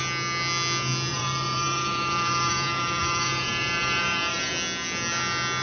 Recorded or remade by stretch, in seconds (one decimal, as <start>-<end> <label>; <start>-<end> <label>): 0.0-1.1 recorded; 1.1-4.5 remade; 4.5-5.6 recorded